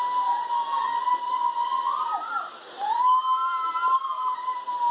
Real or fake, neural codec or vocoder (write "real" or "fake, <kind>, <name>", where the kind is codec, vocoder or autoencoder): real